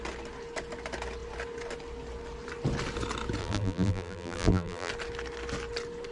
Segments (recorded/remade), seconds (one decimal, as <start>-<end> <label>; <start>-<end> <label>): 0.0-3.4 recorded; 3.4-4.9 remade; 4.9-6.1 recorded